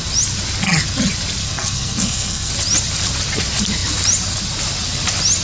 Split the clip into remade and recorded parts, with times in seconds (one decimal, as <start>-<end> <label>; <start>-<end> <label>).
0.0-1.4 recorded; 1.4-2.5 remade; 2.5-5.4 recorded